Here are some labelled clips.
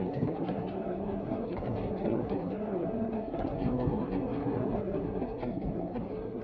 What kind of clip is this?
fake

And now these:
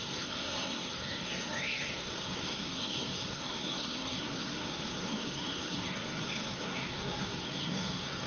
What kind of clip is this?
fake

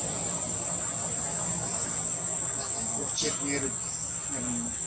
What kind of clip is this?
real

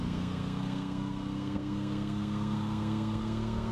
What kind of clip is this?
fake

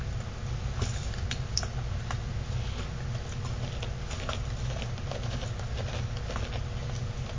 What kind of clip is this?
real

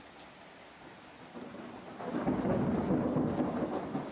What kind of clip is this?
real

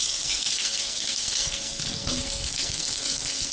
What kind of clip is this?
fake